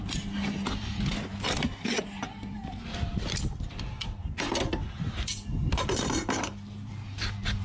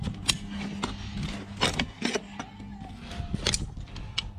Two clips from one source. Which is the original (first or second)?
second